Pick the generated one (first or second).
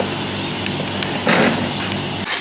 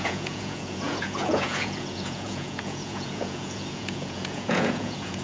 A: second